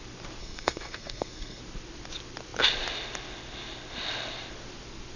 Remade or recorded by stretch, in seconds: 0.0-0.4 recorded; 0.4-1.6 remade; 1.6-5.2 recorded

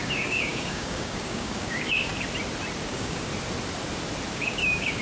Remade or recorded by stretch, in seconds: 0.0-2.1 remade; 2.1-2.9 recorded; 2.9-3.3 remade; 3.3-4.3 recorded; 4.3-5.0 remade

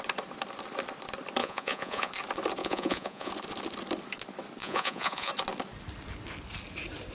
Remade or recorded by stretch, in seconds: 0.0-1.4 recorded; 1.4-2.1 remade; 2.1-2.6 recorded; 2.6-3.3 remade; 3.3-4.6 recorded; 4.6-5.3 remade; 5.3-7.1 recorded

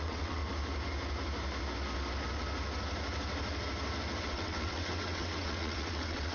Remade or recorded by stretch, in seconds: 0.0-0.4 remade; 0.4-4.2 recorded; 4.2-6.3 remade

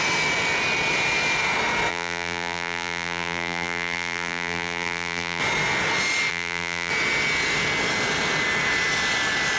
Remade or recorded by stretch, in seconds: 0.0-1.9 recorded; 1.9-5.4 remade; 5.4-6.3 recorded; 6.3-6.9 remade; 6.9-9.6 recorded